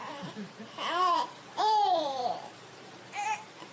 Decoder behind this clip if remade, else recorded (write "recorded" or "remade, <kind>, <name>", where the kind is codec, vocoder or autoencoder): remade, vocoder, BigVGAN v2